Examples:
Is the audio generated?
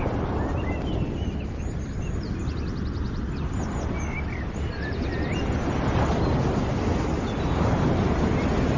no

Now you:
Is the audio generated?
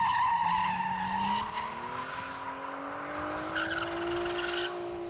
no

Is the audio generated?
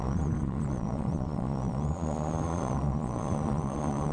yes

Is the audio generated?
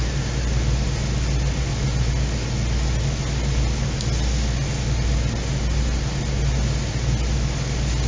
no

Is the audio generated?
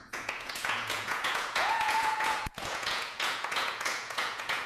yes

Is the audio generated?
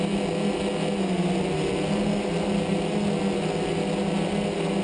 no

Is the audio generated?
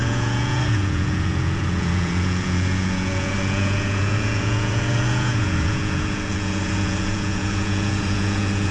yes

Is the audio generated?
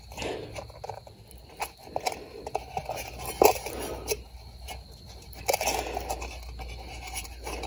no